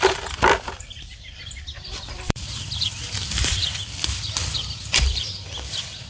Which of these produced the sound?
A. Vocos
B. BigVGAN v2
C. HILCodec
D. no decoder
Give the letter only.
B